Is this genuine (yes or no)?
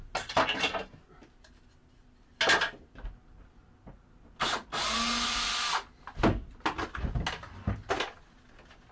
yes